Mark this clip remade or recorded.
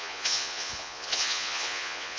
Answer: remade